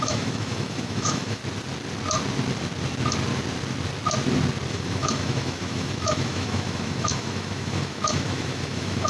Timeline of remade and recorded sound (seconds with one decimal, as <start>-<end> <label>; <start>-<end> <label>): 0.0-1.4 remade; 1.4-4.7 recorded; 4.7-9.1 remade

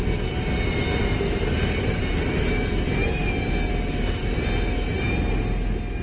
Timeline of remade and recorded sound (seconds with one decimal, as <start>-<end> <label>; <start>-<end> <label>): 0.0-6.0 recorded

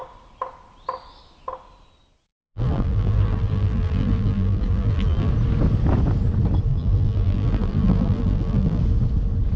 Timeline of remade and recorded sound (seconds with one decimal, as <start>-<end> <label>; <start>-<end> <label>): 0.0-2.3 recorded; 2.3-5.3 remade; 5.3-6.7 recorded; 6.7-8.8 remade; 8.8-9.6 recorded

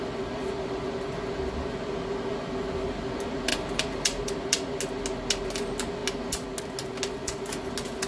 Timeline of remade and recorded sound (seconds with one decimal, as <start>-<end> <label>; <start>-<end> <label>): 0.0-3.5 recorded; 3.5-4.2 remade; 4.2-8.1 recorded

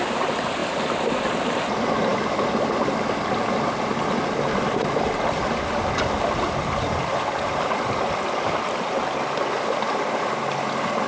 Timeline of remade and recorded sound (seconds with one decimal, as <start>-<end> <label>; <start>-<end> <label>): 0.0-11.1 recorded

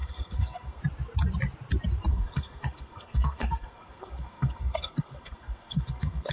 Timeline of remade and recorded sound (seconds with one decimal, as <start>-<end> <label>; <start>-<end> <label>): 0.0-0.8 remade; 0.8-2.1 recorded; 2.1-6.3 remade